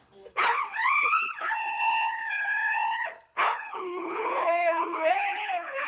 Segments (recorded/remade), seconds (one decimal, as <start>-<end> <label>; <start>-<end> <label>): 0.0-5.9 remade